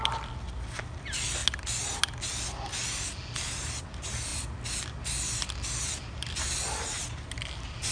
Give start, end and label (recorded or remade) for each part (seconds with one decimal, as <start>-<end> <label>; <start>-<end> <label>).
0.0-7.9 recorded

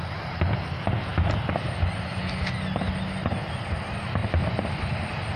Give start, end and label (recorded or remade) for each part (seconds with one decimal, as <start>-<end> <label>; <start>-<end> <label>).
0.0-4.2 recorded; 4.2-4.7 remade; 4.7-5.4 recorded